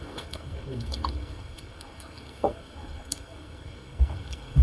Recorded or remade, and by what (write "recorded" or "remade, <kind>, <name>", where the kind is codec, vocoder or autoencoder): remade, codec, SNAC